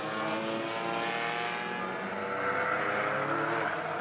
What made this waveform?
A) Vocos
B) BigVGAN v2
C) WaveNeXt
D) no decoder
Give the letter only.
D